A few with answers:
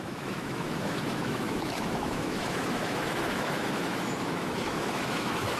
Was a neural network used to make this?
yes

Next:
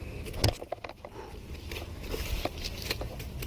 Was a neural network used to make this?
no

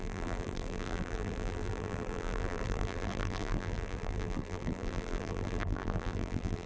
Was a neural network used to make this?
yes